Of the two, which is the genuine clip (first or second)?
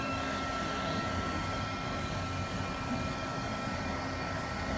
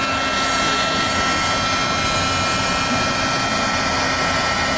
second